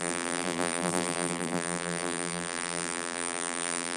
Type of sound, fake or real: fake